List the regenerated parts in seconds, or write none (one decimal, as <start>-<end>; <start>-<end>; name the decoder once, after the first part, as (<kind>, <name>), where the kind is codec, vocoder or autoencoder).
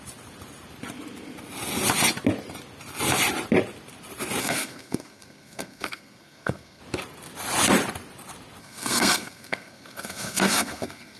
4.4-6.8 (codec, SNAC); 8.6-11.2